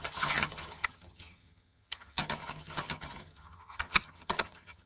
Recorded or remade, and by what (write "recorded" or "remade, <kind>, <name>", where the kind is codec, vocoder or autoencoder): remade, vocoder, HiFi-GAN